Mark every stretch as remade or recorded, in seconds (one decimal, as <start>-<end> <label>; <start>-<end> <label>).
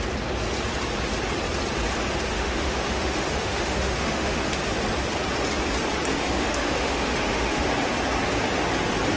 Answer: 0.0-2.3 recorded; 2.3-4.6 remade; 4.6-6.1 recorded; 6.1-7.6 remade; 7.6-9.2 recorded